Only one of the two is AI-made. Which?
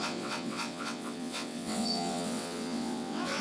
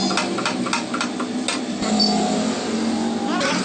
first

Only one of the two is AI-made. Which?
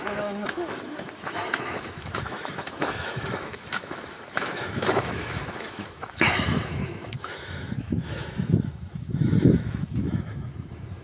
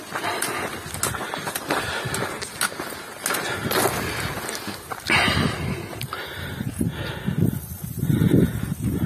first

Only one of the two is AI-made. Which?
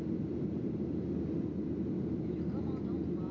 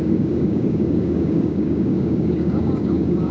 second